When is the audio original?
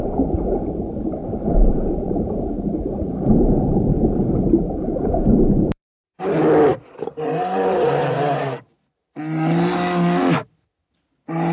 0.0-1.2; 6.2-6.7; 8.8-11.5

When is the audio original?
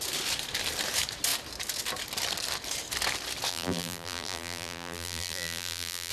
0.0-3.5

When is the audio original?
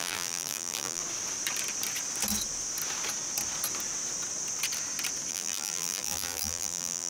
1.0-5.3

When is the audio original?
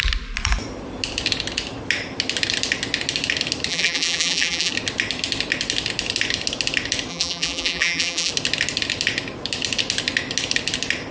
0.0-3.7; 4.7-7.1; 8.3-11.1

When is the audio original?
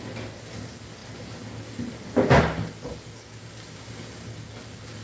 0.0-5.0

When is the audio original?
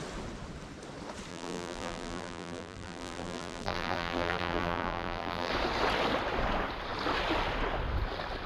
0.0-1.3; 5.5-8.5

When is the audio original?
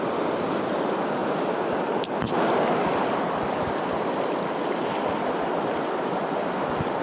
0.0-7.0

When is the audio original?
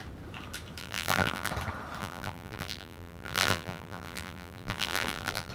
0.0-0.8; 1.5-2.0